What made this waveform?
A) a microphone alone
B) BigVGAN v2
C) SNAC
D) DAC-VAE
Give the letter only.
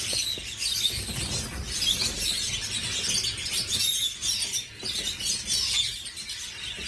A